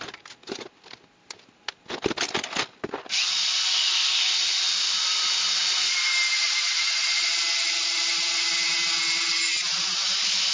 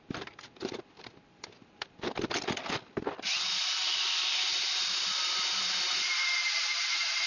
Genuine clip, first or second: first